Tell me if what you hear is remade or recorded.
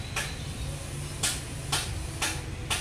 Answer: recorded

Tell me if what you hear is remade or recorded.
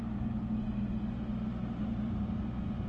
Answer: recorded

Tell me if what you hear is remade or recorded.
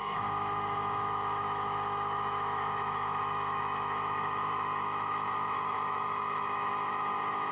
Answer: remade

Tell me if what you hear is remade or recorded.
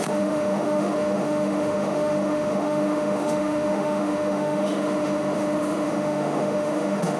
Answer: remade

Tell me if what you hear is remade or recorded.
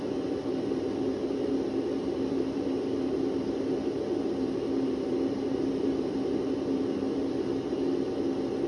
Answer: recorded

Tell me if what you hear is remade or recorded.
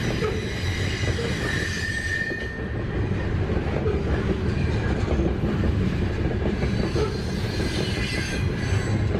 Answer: recorded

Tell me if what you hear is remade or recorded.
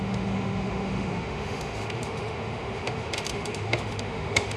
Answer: remade